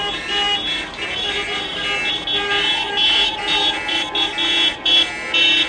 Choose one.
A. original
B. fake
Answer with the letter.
A